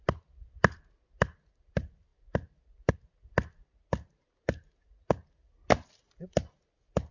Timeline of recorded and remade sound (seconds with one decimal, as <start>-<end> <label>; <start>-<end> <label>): 0.0-7.1 recorded